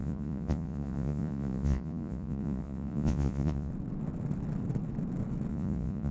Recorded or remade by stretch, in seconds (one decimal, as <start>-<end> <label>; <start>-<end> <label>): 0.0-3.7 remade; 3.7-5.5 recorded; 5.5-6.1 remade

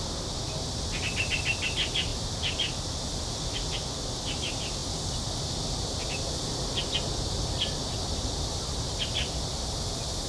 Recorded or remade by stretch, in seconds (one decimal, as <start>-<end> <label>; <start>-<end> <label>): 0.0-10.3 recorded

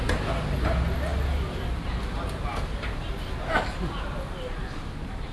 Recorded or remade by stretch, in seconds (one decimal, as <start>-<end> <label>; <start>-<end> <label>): 0.0-5.3 recorded